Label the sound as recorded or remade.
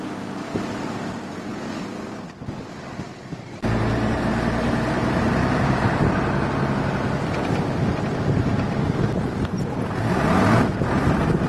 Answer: recorded